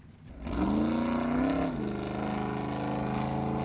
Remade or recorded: recorded